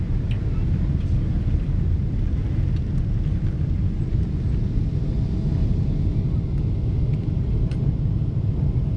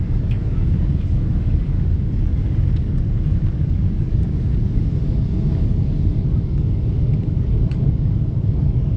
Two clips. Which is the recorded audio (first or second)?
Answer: first